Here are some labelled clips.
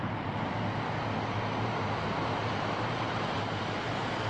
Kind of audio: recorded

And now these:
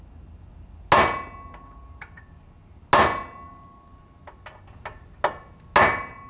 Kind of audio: recorded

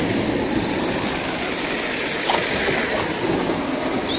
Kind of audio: recorded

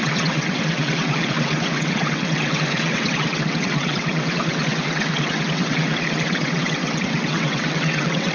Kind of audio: remade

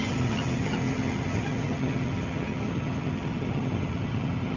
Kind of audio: remade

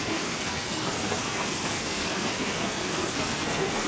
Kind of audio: remade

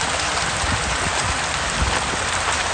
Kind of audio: recorded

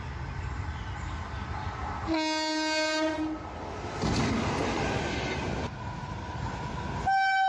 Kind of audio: recorded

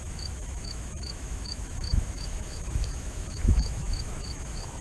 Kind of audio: remade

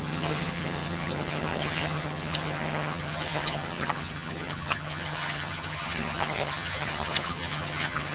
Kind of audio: remade